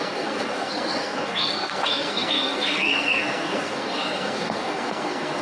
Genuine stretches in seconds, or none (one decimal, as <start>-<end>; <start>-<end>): none